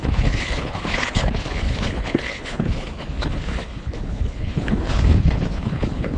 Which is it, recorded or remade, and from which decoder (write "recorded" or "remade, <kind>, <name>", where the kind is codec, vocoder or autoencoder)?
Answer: remade, codec, HILCodec